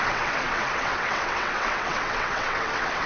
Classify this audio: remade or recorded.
remade